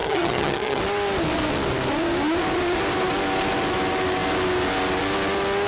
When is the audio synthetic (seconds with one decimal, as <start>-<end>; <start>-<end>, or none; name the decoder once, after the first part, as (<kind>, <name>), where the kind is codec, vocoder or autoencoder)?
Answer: 0.0-0.8 (vocoder, HiFi-GAN)